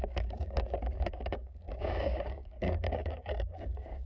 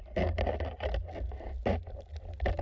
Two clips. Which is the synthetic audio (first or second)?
first